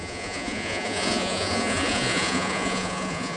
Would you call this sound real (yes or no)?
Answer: no